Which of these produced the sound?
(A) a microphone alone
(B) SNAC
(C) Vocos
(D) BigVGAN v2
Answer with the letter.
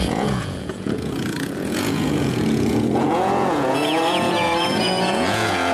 C